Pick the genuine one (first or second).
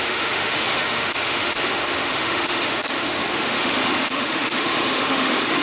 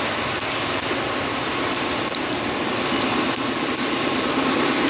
second